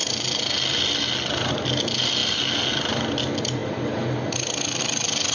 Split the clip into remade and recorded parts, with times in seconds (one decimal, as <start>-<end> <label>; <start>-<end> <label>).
0.0-5.3 recorded